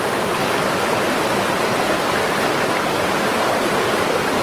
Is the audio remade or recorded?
recorded